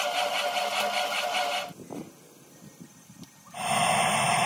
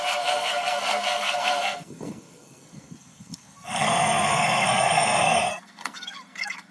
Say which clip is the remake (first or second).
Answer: second